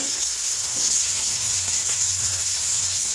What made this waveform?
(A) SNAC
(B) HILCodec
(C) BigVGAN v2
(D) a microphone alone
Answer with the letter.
A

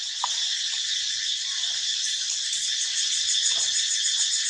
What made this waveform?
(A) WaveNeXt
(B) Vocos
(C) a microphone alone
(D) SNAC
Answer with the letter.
C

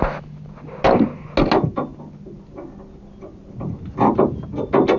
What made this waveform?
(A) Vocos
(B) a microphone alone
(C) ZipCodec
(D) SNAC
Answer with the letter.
B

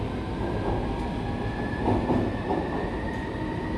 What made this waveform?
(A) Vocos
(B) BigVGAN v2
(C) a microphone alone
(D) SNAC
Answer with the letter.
C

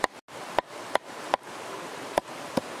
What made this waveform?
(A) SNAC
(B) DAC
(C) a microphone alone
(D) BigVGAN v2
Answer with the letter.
C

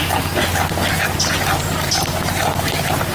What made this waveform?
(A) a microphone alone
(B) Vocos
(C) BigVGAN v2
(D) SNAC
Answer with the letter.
A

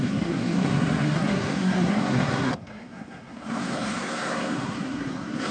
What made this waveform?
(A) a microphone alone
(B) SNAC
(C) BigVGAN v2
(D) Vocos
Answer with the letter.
B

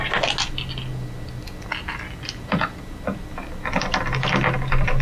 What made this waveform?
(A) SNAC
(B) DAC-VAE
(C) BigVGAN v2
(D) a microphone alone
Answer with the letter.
D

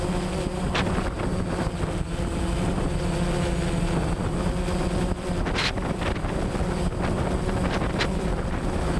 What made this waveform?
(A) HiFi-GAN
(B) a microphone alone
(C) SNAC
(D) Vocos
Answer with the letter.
B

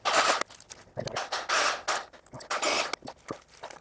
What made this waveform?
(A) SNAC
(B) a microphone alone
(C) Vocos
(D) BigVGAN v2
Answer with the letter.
B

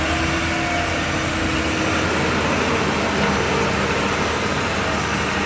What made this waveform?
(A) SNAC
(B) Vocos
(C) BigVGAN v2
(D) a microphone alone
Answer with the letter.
D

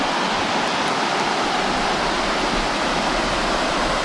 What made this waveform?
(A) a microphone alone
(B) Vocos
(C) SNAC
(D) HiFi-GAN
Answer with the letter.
A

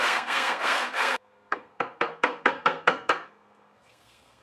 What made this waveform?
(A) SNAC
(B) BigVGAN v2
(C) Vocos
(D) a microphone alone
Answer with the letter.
A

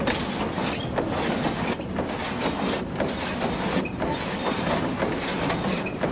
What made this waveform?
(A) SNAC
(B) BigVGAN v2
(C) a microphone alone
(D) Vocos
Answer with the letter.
C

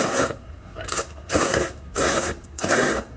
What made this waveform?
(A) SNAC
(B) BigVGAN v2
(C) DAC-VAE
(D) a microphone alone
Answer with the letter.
A